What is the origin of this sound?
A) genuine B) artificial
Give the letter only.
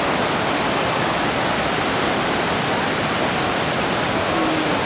A